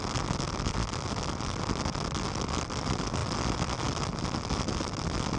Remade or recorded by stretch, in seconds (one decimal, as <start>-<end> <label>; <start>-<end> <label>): 0.0-5.4 recorded